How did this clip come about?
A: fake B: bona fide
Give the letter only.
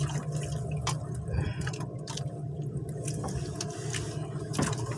B